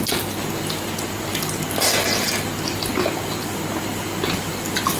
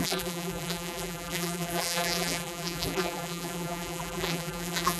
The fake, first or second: second